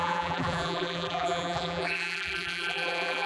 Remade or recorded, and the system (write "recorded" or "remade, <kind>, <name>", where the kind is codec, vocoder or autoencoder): remade, vocoder, BigVGAN v2